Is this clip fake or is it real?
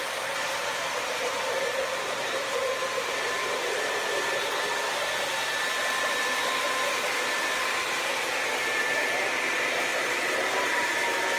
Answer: fake